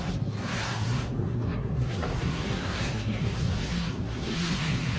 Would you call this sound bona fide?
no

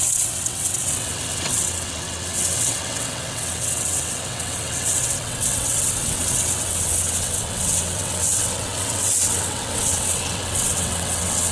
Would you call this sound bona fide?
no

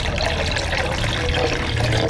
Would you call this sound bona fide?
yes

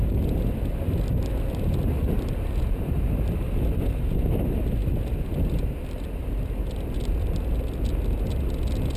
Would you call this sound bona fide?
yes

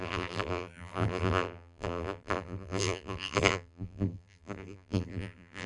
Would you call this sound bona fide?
no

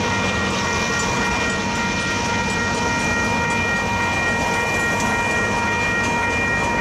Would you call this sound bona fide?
yes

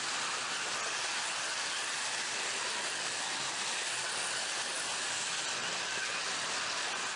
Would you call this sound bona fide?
yes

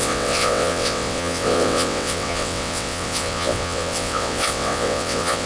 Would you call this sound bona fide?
no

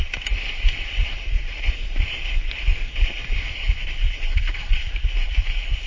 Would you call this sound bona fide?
yes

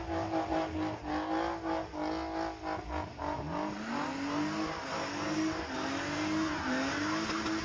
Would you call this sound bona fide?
yes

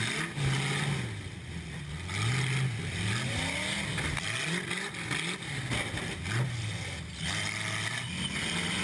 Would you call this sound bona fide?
yes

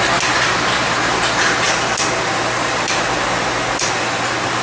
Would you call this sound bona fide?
yes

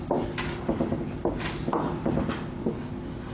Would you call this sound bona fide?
yes